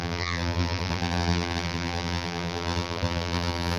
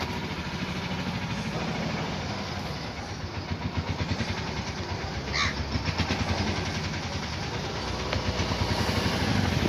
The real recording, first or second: second